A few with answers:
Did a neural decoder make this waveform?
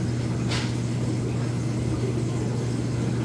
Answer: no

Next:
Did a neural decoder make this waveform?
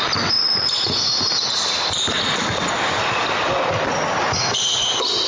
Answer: no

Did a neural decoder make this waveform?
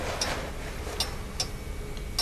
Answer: no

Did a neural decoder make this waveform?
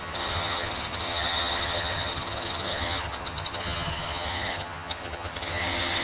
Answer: yes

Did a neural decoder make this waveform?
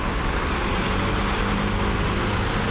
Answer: no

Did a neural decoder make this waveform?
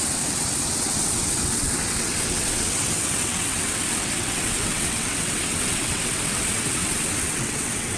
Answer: yes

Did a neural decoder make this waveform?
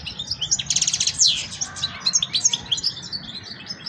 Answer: no